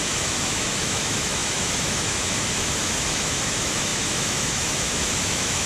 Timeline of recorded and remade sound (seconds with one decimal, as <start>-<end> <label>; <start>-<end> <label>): 0.0-5.7 remade